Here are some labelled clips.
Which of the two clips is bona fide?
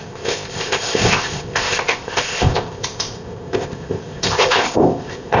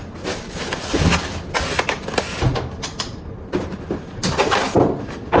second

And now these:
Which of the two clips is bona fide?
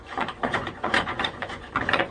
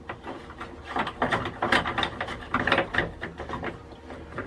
second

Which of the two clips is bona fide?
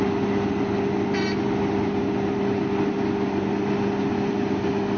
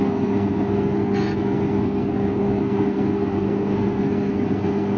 first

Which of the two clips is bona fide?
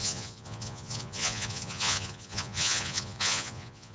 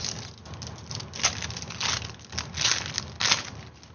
second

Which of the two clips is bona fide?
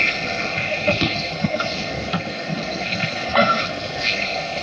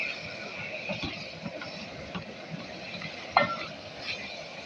second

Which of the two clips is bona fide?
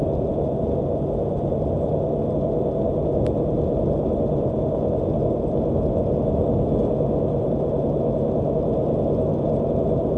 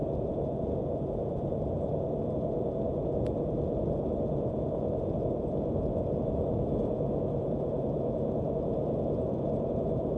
first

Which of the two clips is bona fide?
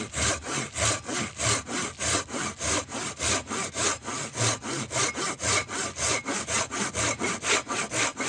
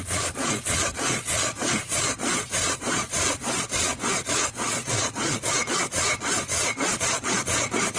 first